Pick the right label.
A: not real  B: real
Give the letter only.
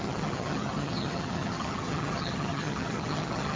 A